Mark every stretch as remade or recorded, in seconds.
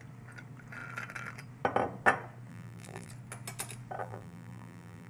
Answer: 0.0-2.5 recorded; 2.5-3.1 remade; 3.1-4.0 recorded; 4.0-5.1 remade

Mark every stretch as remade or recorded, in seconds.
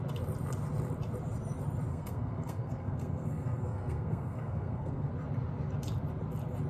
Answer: 0.0-1.9 recorded; 1.9-5.1 remade; 5.1-6.7 recorded